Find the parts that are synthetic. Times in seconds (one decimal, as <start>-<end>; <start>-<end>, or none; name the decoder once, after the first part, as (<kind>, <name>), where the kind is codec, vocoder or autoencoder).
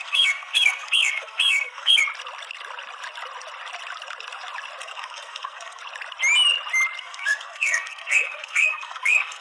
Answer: 0.0-2.0 (codec, SNAC); 4.8-5.8; 7.0-9.4